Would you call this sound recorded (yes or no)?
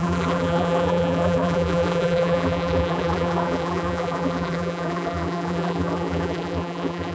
no